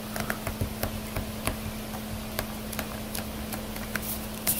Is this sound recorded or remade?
recorded